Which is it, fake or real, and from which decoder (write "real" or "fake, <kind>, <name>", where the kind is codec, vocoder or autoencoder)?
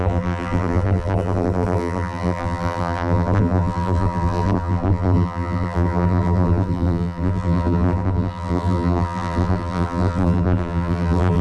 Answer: fake, vocoder, BigVGAN v2